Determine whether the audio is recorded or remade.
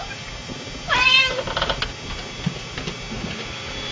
recorded